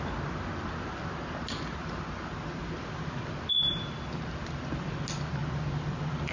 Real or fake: real